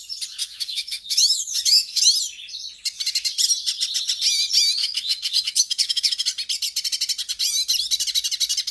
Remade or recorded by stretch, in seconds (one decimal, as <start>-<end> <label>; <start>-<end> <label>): 0.0-0.4 recorded; 0.4-2.0 remade; 2.0-4.8 recorded; 4.8-6.1 remade; 6.1-8.7 recorded